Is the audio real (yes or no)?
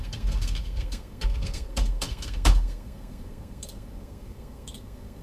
no